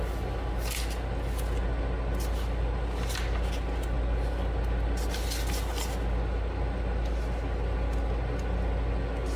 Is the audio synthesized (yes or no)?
no